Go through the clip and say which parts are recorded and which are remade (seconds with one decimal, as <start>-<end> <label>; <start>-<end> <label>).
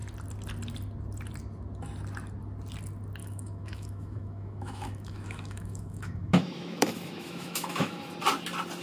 0.0-3.2 recorded; 3.2-8.1 remade; 8.1-8.8 recorded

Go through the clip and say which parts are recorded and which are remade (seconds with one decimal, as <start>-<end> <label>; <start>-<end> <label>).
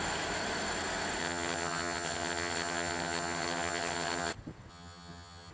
0.0-1.2 recorded; 1.2-4.3 remade; 4.3-4.7 recorded; 4.7-5.5 remade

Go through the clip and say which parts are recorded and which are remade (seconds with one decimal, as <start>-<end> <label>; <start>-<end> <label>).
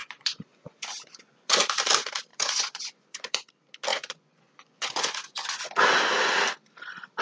0.0-1.6 remade; 1.6-2.3 recorded; 2.3-3.5 remade; 3.5-3.9 recorded; 3.9-5.7 remade; 5.7-7.2 recorded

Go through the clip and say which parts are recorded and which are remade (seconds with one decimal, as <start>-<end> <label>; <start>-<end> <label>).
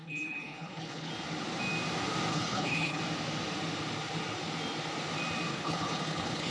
0.0-1.1 remade; 1.1-2.3 recorded; 2.3-3.0 remade; 3.0-5.5 recorded; 5.5-6.5 remade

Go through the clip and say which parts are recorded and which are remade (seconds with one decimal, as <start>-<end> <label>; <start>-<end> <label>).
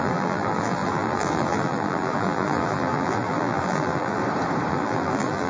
0.0-4.2 remade; 4.2-4.7 recorded; 4.7-5.5 remade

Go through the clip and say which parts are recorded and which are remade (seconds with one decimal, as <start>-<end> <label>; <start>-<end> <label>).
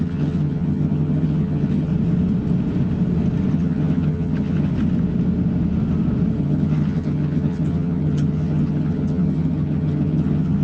0.0-1.9 remade; 1.9-3.5 recorded; 3.5-4.7 remade; 4.7-6.4 recorded; 6.4-10.6 remade